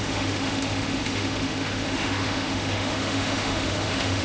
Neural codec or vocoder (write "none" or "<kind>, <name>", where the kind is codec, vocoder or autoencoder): autoencoder, DAC-VAE